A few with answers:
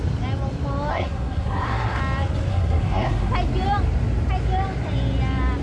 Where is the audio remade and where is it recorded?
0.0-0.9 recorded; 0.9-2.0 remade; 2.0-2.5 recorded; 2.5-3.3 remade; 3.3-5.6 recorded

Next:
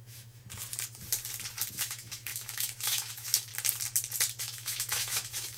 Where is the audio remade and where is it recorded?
0.0-0.4 remade; 0.4-1.7 recorded; 1.7-3.5 remade; 3.5-4.4 recorded; 4.4-5.6 remade

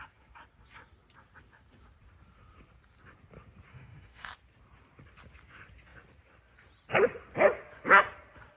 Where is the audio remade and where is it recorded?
0.0-3.7 recorded; 3.7-4.3 remade; 4.3-8.6 recorded

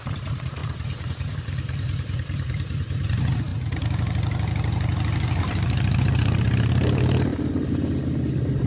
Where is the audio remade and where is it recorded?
0.0-7.3 remade; 7.3-8.7 recorded

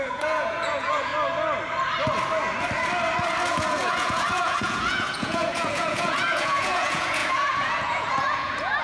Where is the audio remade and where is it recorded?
0.0-1.1 remade; 1.1-3.5 recorded; 3.5-8.8 remade

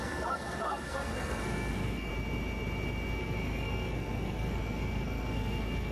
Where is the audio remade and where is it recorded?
0.0-2.1 remade; 2.1-3.2 recorded; 3.2-5.9 remade

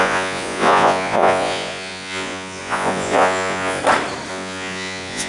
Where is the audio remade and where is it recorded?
0.0-3.8 remade; 3.8-4.3 recorded; 4.3-5.3 remade